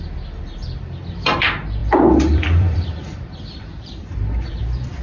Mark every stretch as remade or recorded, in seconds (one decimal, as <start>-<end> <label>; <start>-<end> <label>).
0.0-1.8 recorded; 1.8-4.6 remade; 4.6-5.0 recorded